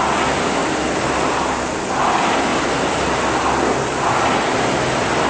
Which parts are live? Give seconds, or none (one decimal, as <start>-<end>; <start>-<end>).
0.0-5.3